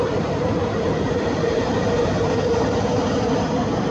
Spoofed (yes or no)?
yes